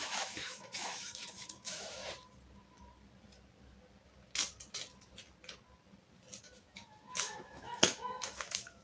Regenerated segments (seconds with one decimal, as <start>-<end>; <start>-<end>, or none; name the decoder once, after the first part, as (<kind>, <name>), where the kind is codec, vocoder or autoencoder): 0.0-2.0 (autoencoder, DAC-VAE); 6.4-8.8